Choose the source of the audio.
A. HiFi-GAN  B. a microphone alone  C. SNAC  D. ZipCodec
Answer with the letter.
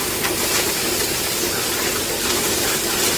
B